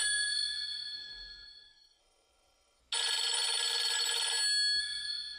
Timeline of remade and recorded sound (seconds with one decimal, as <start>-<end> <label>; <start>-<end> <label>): 0.0-2.8 remade; 2.8-4.8 recorded; 4.8-5.4 remade